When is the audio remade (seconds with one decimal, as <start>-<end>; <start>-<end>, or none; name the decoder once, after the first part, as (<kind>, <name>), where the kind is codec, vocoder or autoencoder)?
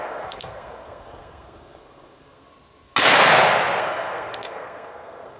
0.0-2.5 (codec, SNAC); 3.8-5.4